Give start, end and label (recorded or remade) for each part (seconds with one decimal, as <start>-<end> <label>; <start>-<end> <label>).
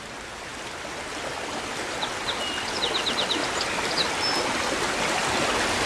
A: 0.0-5.9 recorded